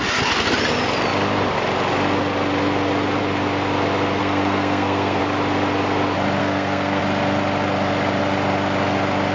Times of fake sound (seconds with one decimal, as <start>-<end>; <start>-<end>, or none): 4.2-5.2; 6.4-7.0